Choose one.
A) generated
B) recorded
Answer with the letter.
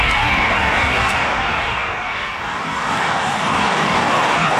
A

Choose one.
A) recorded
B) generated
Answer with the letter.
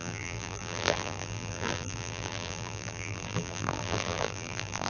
B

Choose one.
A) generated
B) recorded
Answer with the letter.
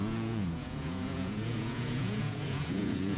A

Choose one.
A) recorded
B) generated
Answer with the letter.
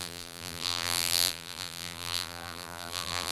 B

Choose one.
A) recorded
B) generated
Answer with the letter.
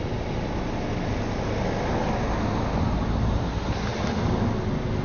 A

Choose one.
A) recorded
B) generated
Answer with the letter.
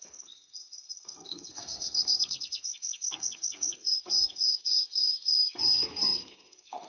B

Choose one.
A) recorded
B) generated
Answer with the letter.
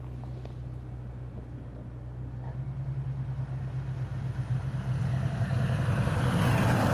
A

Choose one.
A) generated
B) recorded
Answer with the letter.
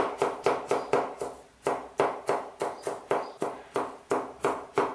B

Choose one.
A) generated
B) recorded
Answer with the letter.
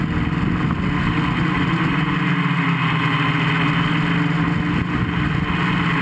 B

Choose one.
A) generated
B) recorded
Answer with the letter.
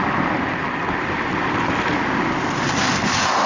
B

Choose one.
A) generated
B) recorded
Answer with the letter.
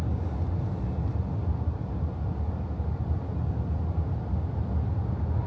B